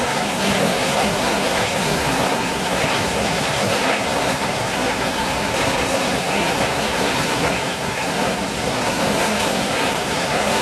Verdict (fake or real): fake